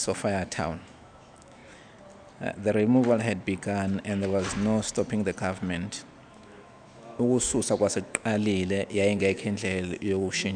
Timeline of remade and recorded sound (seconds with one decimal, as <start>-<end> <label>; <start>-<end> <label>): 0.0-1.6 remade; 1.6-6.3 recorded; 6.3-10.6 remade